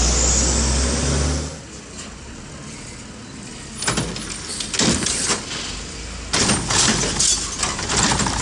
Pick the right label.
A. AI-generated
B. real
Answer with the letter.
B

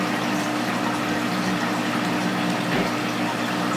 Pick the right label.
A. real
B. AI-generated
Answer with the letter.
A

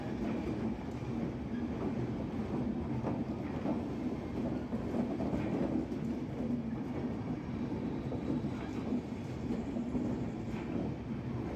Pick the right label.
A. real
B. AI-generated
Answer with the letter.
A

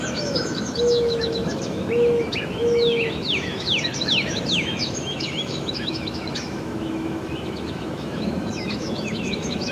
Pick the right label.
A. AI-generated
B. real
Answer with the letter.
A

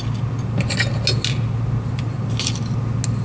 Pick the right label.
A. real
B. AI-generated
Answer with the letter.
A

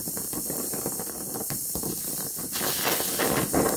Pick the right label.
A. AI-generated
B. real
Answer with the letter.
B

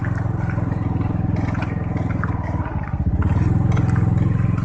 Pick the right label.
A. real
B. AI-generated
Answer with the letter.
A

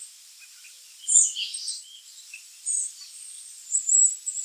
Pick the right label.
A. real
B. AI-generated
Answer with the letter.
B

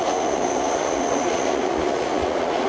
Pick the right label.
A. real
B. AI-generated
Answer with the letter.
B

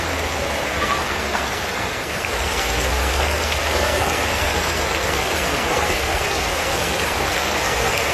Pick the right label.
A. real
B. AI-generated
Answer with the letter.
B